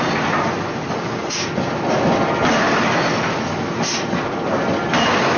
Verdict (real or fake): real